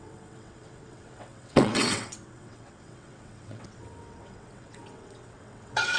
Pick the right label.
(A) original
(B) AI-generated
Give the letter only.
B